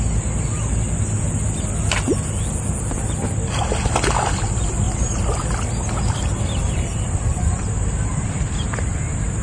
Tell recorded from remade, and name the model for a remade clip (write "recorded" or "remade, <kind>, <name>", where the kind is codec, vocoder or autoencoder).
recorded